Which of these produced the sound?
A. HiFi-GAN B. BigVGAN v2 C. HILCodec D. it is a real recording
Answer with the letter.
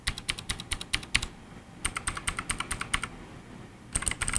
D